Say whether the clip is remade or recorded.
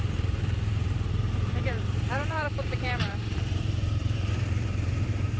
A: remade